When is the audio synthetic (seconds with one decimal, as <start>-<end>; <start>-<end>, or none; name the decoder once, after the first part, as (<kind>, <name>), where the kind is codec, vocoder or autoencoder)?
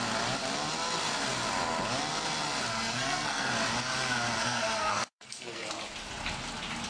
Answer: 2.7-3.5 (codec, SNAC); 4.4-5.7